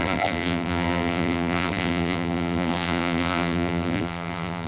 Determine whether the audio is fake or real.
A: fake